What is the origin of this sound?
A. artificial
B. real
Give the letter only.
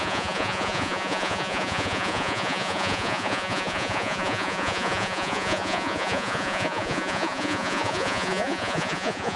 A